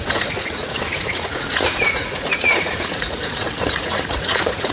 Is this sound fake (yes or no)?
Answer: yes